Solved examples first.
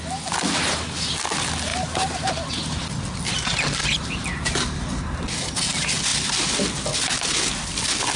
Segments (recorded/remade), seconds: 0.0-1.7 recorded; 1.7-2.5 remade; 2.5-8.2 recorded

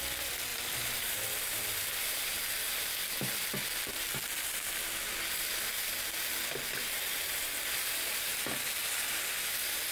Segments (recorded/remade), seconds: 0.0-0.5 recorded; 0.5-3.5 remade; 3.5-6.8 recorded; 6.8-8.4 remade; 8.4-9.9 recorded

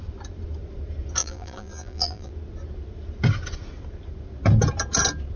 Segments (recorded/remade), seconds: 0.0-1.2 recorded; 1.2-2.3 remade; 2.3-5.4 recorded

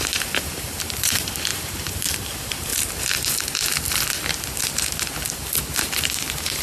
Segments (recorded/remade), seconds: 0.0-2.7 remade; 2.7-6.0 recorded; 6.0-6.6 remade

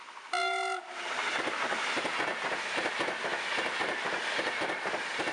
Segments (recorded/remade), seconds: 0.0-5.3 recorded

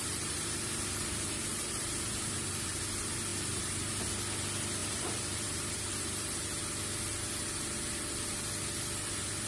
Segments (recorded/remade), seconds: 0.0-2.8 remade; 2.8-3.3 recorded; 3.3-4.0 remade; 4.0-4.8 recorded; 4.8-6.6 remade; 6.6-9.5 recorded